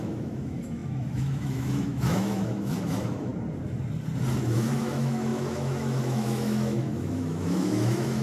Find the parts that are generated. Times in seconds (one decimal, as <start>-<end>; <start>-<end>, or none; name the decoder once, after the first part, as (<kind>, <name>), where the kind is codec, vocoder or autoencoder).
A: 0.0-3.3 (autoencoder, DAC-VAE); 4.4-8.2